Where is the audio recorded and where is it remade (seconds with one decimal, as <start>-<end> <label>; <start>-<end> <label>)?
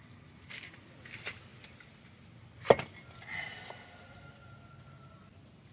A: 0.0-5.7 recorded